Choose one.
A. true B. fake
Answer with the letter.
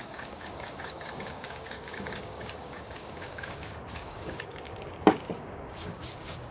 B